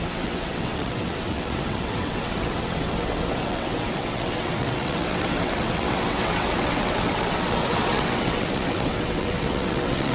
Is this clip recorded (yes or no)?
no